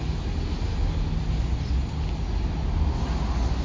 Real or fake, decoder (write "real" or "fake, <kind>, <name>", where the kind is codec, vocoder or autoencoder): real